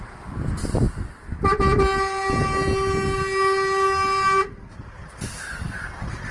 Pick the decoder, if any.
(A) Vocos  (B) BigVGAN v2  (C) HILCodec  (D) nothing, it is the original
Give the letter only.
D